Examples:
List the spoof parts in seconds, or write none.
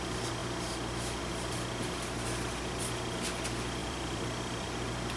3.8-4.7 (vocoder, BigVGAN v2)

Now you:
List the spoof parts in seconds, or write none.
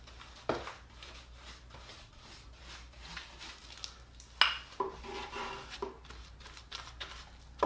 1.9-2.5 (vocoder, Vocos)